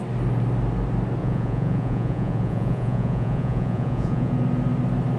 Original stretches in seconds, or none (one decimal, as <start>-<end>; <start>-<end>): 0.0-1.2; 4.3-5.2